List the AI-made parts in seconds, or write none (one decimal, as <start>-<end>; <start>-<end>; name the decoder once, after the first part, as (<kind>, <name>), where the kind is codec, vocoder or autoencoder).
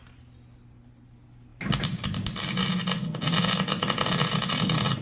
none